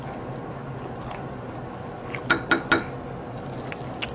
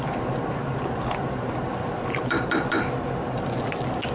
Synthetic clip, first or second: second